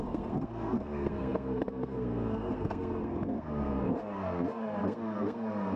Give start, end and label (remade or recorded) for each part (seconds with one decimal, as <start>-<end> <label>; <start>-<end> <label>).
0.0-5.8 remade